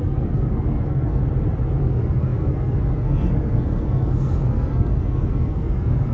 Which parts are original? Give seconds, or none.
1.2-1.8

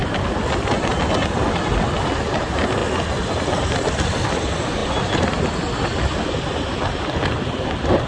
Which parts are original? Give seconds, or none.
0.0-8.1

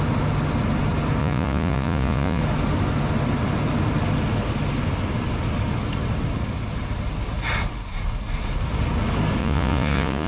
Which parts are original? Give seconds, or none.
0.0-1.2; 2.4-9.4

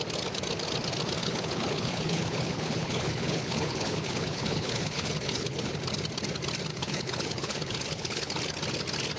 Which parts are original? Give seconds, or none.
0.0-1.2; 5.7-6.7; 8.4-9.2

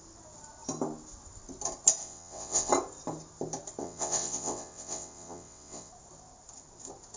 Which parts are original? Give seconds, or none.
0.0-2.0; 2.7-3.8; 5.9-7.2

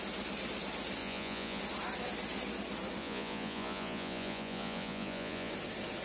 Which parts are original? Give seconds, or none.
0.0-1.0; 1.6-3.0; 5.5-6.0